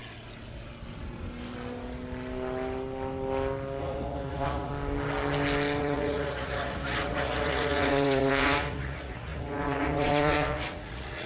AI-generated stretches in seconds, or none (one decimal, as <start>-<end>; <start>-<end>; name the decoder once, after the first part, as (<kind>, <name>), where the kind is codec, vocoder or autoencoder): 3.8-4.7 (vocoder, Vocos); 5.8-11.3